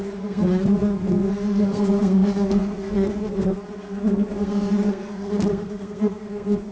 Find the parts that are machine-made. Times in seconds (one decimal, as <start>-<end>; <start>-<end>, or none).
0.0-6.7